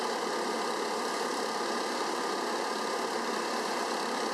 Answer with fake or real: real